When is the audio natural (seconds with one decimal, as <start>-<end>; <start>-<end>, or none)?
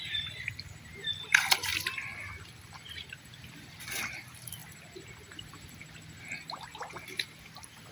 1.7-2.3; 4.6-7.4